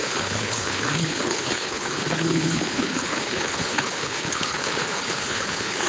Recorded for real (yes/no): no